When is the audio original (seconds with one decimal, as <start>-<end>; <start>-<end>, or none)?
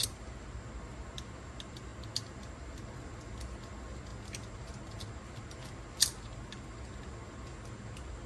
0.0-8.3